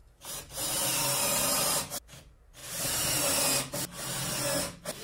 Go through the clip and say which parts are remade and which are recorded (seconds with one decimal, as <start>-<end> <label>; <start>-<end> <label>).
0.0-2.0 remade; 2.0-2.6 recorded; 2.6-3.3 remade; 3.3-5.0 recorded

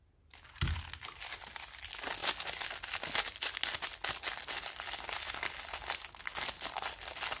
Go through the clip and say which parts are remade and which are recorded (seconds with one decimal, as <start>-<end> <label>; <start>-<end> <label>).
0.0-7.4 recorded